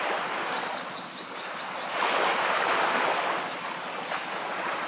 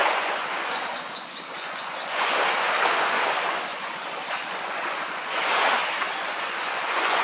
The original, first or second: first